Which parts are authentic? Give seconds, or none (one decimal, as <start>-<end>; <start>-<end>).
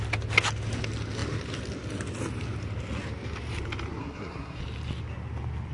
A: 0.0-4.0; 4.6-5.7